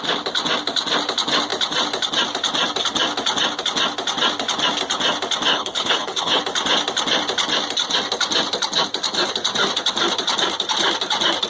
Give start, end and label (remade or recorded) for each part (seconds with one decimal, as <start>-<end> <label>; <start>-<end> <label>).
0.0-5.5 recorded; 5.5-6.4 remade; 6.4-11.5 recorded